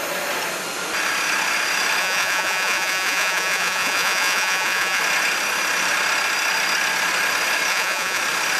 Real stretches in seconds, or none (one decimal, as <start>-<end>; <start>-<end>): 0.0-2.0; 5.0-7.7; 8.2-8.6